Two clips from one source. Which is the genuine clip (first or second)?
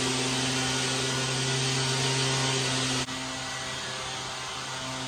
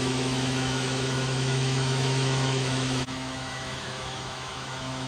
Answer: first